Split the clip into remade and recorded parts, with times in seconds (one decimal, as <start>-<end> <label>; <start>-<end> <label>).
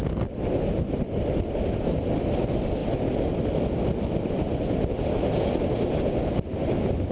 0.0-7.1 recorded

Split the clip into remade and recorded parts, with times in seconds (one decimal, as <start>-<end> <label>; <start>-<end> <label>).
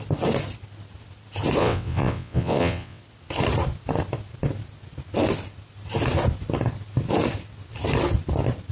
0.0-1.6 recorded; 1.6-3.0 remade; 3.0-8.7 recorded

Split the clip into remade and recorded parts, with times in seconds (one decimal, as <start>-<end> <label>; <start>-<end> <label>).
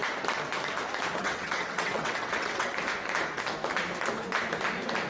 0.0-1.2 recorded; 1.2-2.7 remade; 2.7-5.1 recorded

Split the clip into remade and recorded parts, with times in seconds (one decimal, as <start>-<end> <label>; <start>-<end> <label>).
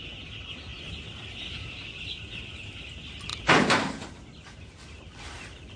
0.0-5.8 recorded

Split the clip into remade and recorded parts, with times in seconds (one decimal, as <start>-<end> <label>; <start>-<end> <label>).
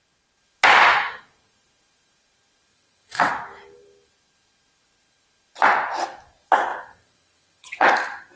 0.0-2.7 recorded; 2.7-3.3 remade; 3.3-6.7 recorded; 6.7-7.9 remade; 7.9-8.4 recorded